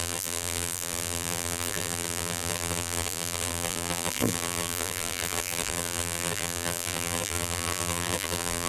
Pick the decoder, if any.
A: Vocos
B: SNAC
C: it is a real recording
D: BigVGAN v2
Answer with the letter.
D